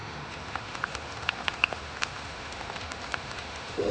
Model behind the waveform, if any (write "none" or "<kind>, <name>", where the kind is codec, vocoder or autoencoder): autoencoder, DAC-VAE